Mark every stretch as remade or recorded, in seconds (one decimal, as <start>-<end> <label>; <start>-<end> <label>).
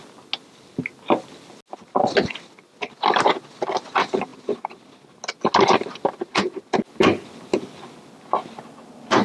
0.0-9.2 recorded